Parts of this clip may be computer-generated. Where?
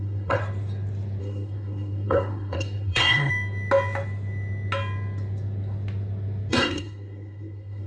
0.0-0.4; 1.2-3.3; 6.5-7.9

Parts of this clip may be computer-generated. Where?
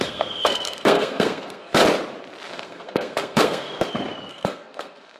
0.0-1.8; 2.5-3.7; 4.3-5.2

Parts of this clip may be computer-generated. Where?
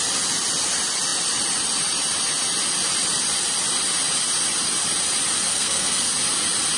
5.5-6.1